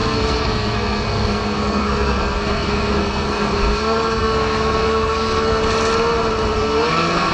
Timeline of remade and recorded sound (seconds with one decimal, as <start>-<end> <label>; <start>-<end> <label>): 0.0-5.6 remade; 5.6-6.5 recorded; 6.5-7.3 remade